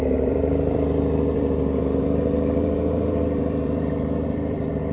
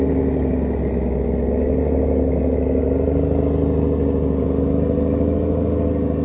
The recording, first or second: second